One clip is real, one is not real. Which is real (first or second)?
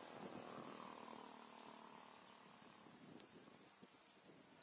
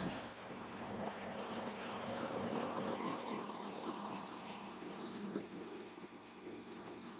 first